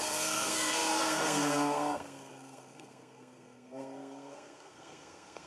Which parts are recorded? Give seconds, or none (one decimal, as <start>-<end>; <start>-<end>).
none